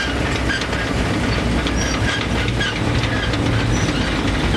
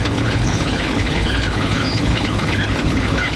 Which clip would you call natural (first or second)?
first